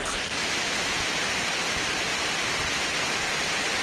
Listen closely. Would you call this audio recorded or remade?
recorded